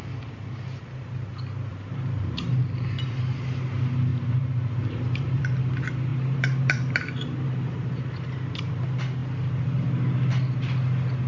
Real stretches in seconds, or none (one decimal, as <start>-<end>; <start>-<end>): 0.0-1.7; 2.4-4.1; 5.4-6.1; 8.7-11.3